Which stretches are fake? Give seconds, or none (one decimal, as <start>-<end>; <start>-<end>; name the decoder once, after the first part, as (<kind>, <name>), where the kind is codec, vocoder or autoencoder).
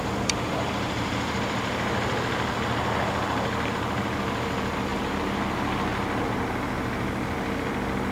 none